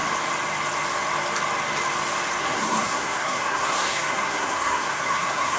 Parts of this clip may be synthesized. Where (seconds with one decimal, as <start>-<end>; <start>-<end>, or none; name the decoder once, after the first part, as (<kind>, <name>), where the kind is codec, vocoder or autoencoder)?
2.4-5.6 (codec, SNAC)